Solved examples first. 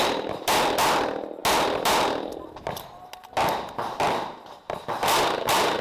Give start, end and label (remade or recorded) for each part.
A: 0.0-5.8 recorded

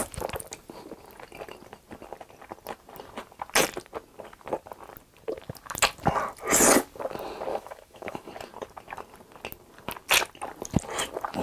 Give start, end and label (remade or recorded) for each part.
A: 0.0-7.5 recorded; 7.5-8.3 remade; 8.3-11.4 recorded

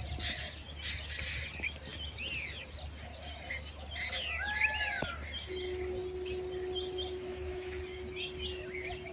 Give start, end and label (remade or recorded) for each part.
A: 0.0-7.3 recorded; 7.3-7.8 remade; 7.8-9.1 recorded

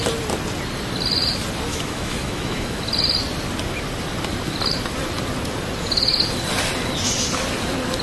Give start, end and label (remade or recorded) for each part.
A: 0.0-1.7 recorded; 1.7-2.8 remade; 2.8-8.0 recorded

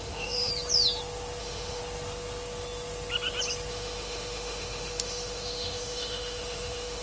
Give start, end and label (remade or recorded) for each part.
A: 0.0-0.5 remade; 0.5-1.4 recorded; 1.4-1.8 remade; 1.8-3.7 recorded; 3.7-7.0 remade